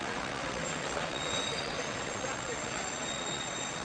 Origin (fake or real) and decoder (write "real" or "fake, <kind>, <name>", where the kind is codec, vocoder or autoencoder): fake, vocoder, WaveNeXt